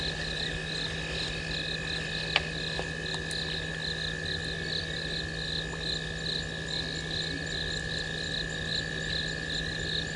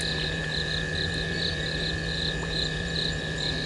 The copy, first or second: second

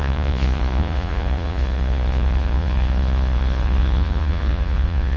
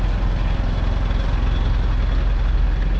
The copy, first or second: first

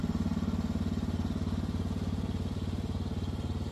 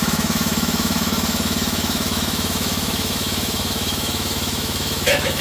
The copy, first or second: second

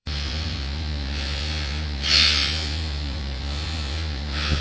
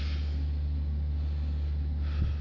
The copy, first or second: first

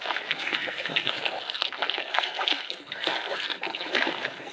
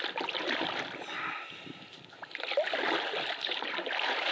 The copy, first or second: first